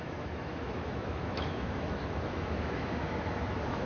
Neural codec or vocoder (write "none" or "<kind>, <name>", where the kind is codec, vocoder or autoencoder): autoencoder, DAC-VAE